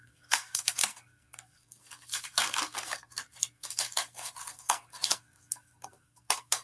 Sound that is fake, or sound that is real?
fake